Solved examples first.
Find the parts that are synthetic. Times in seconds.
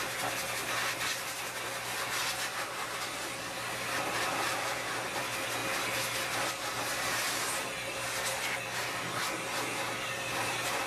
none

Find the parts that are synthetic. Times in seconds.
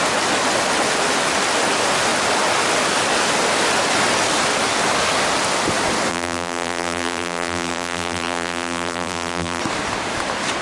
6.1-9.6 (vocoder, BigVGAN v2)